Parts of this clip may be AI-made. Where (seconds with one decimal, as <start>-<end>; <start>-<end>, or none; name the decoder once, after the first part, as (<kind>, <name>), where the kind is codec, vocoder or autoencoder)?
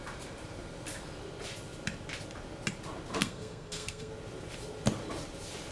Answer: 3.2-4.1 (codec, SNAC)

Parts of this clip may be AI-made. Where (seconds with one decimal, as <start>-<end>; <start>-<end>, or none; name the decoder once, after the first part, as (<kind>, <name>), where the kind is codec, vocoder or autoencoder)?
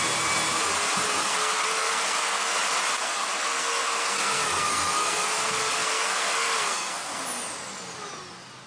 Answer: 1.2-2.6 (codec, SNAC); 3.0-7.2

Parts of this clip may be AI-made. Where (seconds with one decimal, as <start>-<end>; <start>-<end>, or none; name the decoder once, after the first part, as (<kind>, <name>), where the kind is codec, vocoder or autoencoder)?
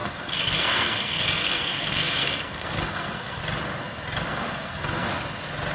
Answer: 0.0-3.4 (codec, SNAC); 4.3-5.1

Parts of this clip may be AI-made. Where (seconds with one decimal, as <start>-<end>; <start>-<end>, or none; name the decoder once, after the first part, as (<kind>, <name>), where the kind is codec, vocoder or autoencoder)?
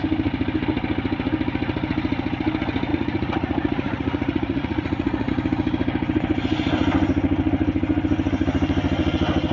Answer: 2.9-5.3 (vocoder, Vocos)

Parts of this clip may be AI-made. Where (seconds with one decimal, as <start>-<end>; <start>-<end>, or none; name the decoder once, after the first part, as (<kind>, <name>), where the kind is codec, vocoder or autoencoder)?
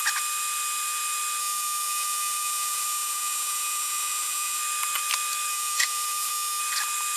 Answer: 1.4-4.6 (autoencoder, DAC-VAE); 5.5-6.6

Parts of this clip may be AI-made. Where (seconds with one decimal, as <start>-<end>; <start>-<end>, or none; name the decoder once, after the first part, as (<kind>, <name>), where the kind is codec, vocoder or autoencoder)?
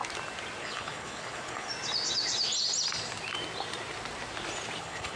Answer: 0.6-1.7 (codec, HILCodec); 4.8-5.2